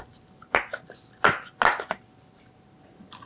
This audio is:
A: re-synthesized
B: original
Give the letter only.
B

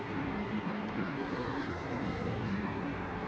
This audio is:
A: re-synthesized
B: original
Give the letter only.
A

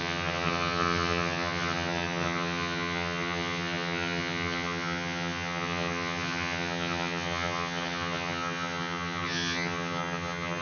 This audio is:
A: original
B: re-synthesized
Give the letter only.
B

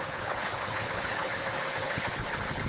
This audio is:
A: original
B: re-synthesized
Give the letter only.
B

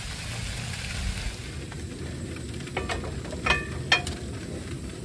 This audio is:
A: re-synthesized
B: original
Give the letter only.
B